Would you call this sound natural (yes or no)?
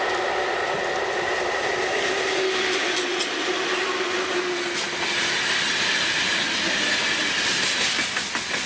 yes